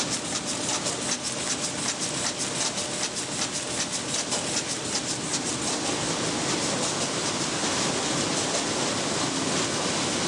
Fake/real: real